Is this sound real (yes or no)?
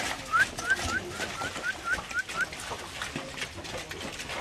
yes